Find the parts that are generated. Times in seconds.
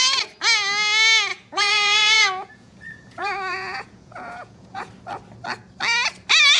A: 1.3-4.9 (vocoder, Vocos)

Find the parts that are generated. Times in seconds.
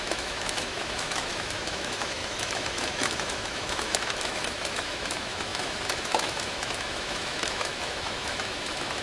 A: 0.0-9.0 (autoencoder, DAC-VAE)